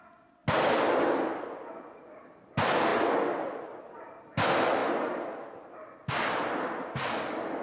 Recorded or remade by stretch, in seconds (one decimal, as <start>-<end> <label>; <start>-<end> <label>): 0.0-7.6 recorded